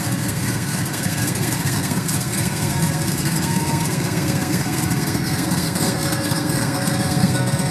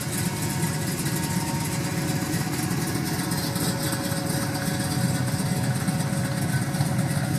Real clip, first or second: second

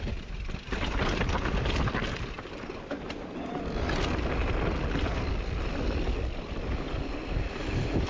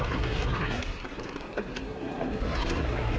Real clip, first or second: first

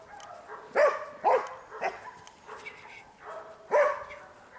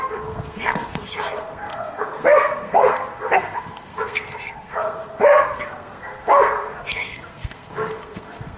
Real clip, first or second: first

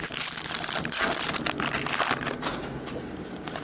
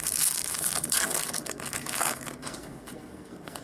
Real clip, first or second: first